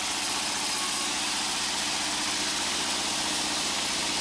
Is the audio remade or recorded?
recorded